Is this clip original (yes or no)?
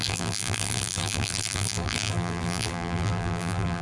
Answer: no